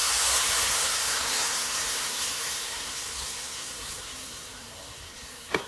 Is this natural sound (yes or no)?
no